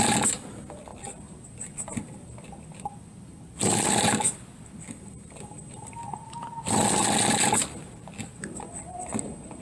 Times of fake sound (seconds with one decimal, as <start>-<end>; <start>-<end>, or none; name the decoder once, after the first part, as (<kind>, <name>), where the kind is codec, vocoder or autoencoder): none

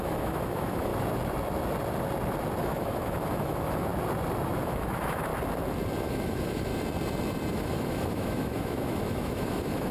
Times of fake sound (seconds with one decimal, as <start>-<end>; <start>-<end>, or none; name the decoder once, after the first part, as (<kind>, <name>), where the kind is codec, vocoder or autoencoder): 0.0-0.9 (autoencoder, DAC-VAE); 2.6-3.9; 4.6-5.3; 6.0-6.7; 7.5-9.9

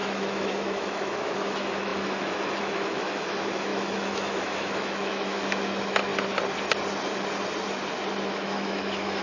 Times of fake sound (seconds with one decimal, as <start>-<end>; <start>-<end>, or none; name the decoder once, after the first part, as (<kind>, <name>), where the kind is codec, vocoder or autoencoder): 0.0-6.1 (autoencoder, DAC-VAE); 8.3-9.2

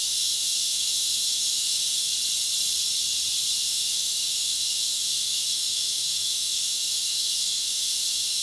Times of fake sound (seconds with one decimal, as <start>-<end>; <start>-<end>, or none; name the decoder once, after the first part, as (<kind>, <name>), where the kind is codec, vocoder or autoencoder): 0.0-2.1 (autoencoder, DAC-VAE); 3.6-8.4

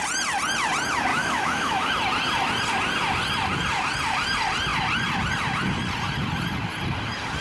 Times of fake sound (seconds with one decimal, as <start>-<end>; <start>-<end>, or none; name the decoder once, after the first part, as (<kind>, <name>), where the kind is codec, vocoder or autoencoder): 1.1-1.9 (autoencoder, DAC-VAE)

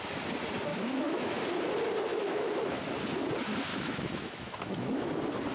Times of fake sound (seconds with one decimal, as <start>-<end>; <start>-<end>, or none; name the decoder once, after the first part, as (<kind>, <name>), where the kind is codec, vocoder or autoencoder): 0.7-1.4 (autoencoder, DAC-VAE); 2.1-2.8; 3.7-5.1